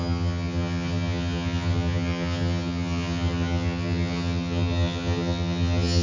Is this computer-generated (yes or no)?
yes